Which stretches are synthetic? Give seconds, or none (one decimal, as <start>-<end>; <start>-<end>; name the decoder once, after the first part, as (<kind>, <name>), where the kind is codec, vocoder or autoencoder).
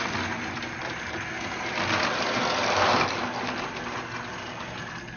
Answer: none